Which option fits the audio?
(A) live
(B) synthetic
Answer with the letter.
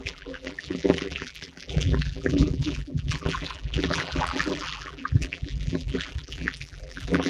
B